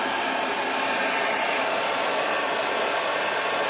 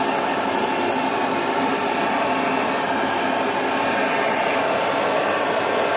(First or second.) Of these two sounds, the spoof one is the first